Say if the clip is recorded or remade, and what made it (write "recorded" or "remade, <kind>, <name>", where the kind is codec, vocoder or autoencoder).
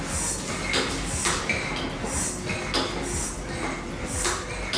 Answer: recorded